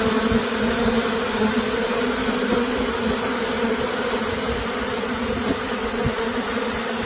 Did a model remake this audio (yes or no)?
no